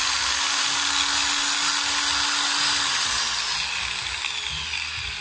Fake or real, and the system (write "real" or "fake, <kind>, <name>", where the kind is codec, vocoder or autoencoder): real